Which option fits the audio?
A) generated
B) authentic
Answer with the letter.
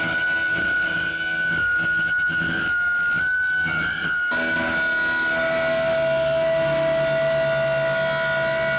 B